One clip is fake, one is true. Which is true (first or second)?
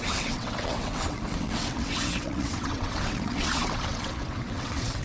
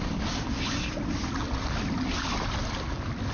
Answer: second